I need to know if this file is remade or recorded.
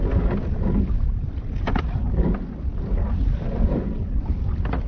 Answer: remade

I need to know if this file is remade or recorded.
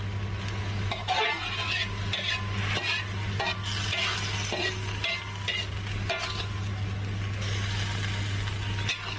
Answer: recorded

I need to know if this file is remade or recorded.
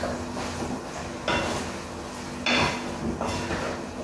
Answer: recorded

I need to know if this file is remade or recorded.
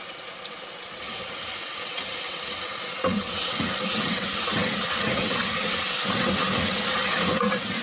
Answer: remade